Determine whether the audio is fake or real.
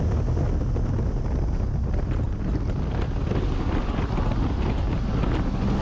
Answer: real